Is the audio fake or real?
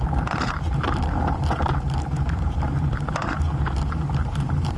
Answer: fake